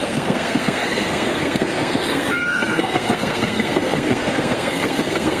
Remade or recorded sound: remade